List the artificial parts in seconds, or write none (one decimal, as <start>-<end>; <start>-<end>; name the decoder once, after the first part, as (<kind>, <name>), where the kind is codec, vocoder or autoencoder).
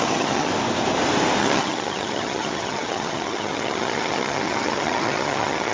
0.0-0.5 (vocoder, HiFi-GAN); 1.4-5.7